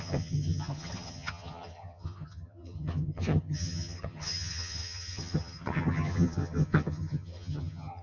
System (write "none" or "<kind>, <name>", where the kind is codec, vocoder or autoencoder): vocoder, HiFi-GAN